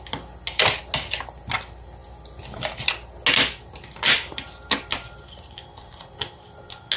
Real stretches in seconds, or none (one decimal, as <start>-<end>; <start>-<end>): 0.0-7.0